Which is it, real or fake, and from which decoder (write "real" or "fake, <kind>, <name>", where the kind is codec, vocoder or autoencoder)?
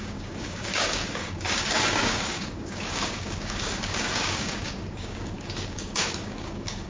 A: fake, codec, DAC